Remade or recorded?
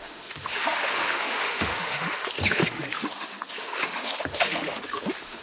remade